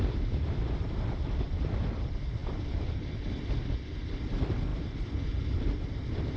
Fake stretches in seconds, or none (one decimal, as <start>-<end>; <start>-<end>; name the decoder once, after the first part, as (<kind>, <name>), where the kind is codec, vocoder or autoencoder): 0.0-6.4 (vocoder, BigVGAN v2)